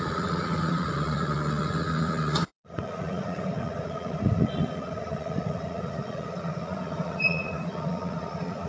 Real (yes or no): no